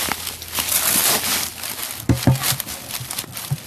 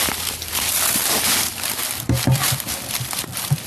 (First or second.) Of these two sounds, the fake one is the second